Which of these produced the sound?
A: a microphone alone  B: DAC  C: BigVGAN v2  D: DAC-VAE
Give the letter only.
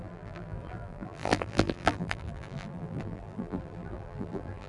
C